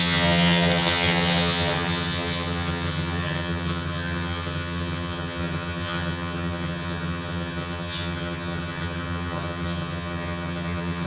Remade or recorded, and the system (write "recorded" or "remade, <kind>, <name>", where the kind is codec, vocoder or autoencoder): remade, vocoder, HiFi-GAN